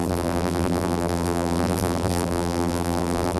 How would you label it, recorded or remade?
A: remade